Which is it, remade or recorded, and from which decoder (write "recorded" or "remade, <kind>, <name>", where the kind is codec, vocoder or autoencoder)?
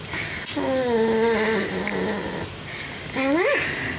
recorded